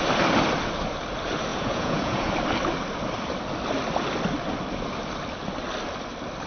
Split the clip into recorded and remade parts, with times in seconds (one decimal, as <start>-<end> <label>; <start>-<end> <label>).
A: 0.0-1.5 recorded; 1.5-2.3 remade; 2.3-6.5 recorded